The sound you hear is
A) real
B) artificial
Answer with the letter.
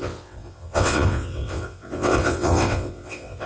B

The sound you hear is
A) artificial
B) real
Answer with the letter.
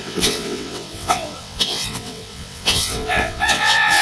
A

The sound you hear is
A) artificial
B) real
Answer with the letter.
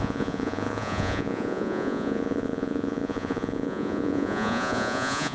A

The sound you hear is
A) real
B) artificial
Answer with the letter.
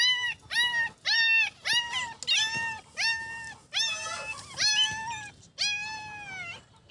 A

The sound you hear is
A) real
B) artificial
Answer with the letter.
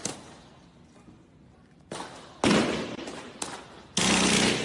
A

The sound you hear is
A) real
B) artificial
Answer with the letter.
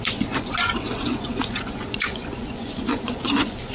B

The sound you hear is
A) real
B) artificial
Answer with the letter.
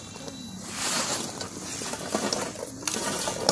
A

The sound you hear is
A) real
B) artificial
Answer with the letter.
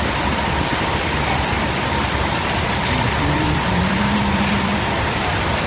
B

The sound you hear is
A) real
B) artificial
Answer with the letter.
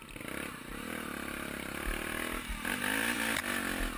A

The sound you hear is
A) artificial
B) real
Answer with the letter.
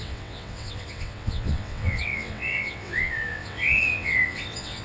A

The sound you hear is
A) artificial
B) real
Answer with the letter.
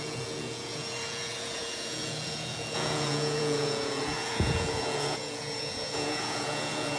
A